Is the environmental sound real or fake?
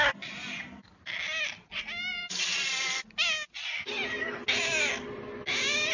real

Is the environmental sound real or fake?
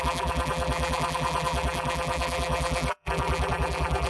fake